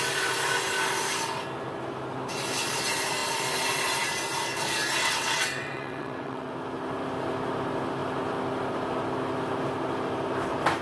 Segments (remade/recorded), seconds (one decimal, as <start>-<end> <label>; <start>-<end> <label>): 0.0-5.0 recorded; 5.0-6.5 remade; 6.5-10.8 recorded